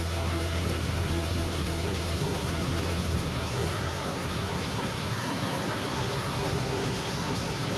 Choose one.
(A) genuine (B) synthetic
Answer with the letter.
B